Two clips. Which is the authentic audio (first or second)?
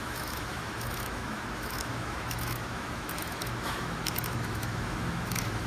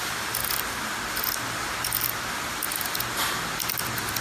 second